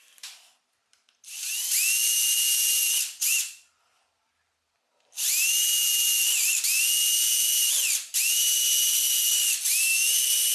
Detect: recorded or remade recorded